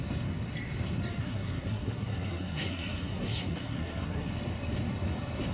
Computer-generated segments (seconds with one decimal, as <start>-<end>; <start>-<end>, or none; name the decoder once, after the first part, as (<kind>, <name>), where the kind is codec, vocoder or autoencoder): 1.2-4.3 (codec, SNAC)